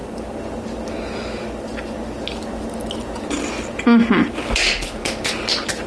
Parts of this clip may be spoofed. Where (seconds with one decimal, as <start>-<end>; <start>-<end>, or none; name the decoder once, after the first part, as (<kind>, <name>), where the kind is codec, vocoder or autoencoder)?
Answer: none